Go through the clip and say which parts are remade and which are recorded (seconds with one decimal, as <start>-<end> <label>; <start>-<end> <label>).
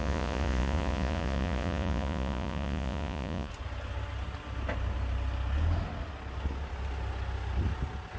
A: 0.0-3.5 remade; 3.5-8.2 recorded